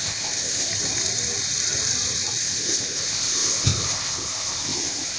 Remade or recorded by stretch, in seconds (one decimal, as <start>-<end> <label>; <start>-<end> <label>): 0.0-0.7 remade; 0.7-2.4 recorded; 2.4-5.2 remade